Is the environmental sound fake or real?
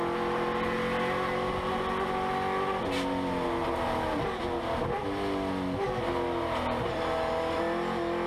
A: real